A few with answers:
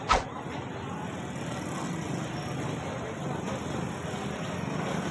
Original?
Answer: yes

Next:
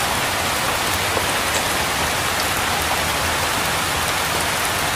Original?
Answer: yes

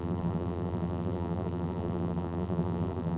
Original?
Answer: no